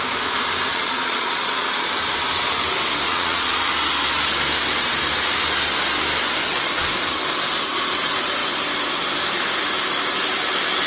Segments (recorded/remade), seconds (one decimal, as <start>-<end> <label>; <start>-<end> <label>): 0.0-0.7 recorded; 0.7-1.8 remade; 1.8-3.1 recorded; 3.1-3.7 remade; 3.7-10.9 recorded